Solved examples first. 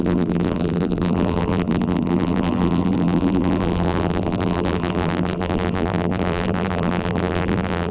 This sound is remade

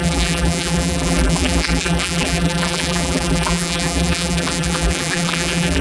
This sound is remade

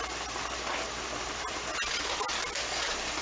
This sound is recorded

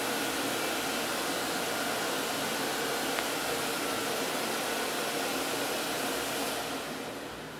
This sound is recorded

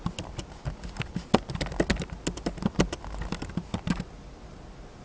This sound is recorded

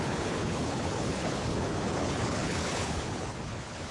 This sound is remade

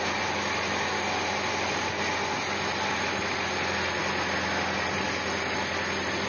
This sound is recorded